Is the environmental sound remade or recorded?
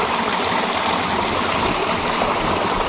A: recorded